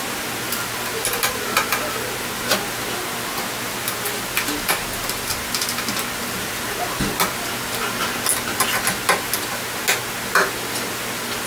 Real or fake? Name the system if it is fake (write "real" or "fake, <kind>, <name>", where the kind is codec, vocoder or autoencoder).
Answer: real